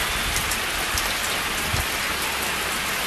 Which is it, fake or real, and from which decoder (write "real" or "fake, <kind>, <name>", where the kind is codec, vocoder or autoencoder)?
real